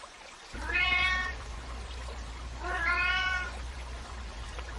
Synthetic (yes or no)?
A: yes